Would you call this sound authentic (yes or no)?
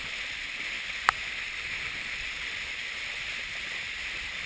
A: yes